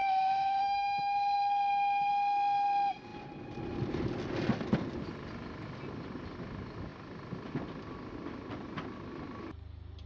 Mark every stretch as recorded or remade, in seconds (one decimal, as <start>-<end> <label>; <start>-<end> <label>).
0.0-2.1 remade; 2.1-10.1 recorded

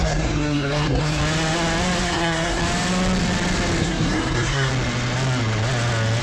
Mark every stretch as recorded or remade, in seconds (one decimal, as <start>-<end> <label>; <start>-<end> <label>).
0.0-1.2 remade; 1.2-2.0 recorded; 2.0-2.6 remade; 2.6-3.8 recorded; 3.8-4.7 remade; 4.7-6.2 recorded

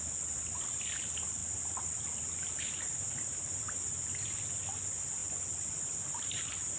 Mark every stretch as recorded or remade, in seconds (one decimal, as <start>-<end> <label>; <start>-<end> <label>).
0.0-5.2 recorded; 5.2-6.2 remade; 6.2-6.8 recorded

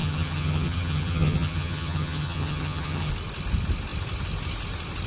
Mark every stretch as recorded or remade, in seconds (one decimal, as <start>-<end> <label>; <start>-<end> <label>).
0.0-3.1 remade; 3.1-5.1 recorded

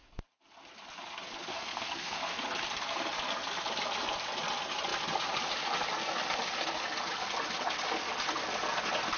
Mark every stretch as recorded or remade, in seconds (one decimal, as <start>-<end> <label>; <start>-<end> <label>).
0.0-1.5 recorded; 1.5-2.2 remade; 2.2-9.2 recorded

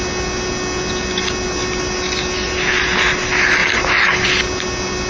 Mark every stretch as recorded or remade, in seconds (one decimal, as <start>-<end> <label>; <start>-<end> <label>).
0.0-5.1 recorded

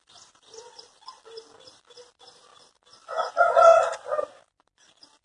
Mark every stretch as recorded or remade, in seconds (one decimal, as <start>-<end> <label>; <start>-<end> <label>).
0.0-2.5 remade; 2.5-3.3 recorded; 3.3-5.2 remade